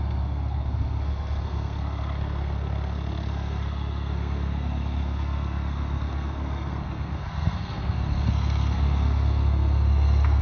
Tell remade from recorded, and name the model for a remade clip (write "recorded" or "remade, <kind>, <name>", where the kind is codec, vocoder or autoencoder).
remade, codec, SNAC